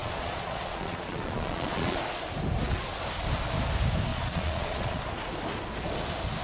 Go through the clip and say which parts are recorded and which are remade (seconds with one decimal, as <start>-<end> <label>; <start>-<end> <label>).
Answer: 0.0-2.0 remade; 2.0-4.1 recorded; 4.1-5.0 remade; 5.0-6.4 recorded